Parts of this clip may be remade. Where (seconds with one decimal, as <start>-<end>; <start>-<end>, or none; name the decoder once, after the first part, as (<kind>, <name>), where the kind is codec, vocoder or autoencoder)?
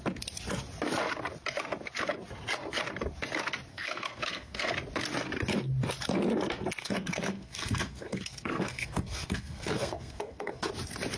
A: 3.7-4.7 (codec, SNAC); 6.8-10.7